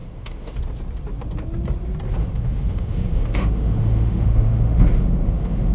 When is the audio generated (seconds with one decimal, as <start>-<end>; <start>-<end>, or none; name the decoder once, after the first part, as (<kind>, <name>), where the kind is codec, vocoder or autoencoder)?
0.0-0.6 (autoencoder, DAC-VAE); 2.2-5.7

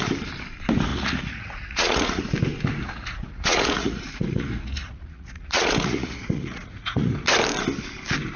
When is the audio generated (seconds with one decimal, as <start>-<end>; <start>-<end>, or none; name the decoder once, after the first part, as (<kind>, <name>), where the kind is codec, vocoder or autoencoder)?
0.9-2.2 (vocoder, Vocos); 2.8-7.1

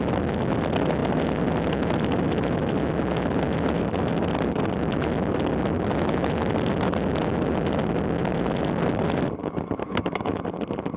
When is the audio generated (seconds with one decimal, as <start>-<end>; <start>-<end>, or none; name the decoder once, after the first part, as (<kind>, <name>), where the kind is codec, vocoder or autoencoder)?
9.4-10.4 (autoencoder, DAC-VAE)

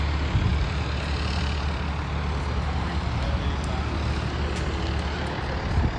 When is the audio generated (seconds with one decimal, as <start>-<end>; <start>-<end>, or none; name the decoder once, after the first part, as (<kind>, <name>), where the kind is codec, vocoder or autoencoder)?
none

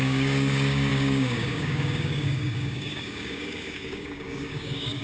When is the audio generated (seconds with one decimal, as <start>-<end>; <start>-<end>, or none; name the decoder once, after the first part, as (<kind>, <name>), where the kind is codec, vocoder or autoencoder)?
0.0-5.0 (codec, DAC)

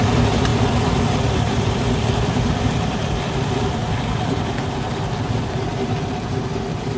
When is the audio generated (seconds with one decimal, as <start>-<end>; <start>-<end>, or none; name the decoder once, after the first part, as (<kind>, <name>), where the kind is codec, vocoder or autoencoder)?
0.0-3.8 (vocoder, BigVGAN v2); 6.6-7.0

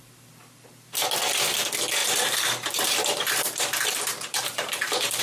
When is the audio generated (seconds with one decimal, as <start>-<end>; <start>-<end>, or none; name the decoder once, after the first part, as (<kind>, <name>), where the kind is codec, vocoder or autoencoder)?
2.0-5.2 (vocoder, BigVGAN v2)